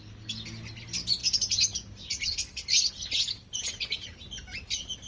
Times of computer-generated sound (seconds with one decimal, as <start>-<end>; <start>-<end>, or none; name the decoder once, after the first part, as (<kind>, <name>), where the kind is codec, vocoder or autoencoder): none